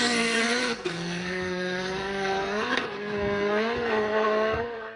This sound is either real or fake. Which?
fake